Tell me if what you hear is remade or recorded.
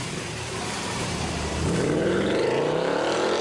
remade